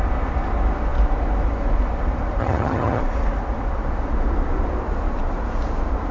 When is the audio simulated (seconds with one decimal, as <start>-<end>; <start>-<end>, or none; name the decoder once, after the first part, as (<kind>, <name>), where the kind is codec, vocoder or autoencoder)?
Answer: 2.4-3.0 (vocoder, HiFi-GAN)